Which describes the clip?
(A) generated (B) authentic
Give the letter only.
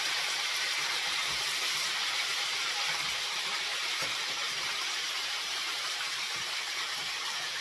A